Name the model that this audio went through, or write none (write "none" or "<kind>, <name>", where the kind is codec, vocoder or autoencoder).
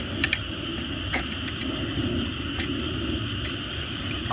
none